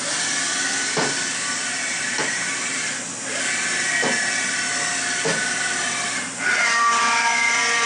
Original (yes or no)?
yes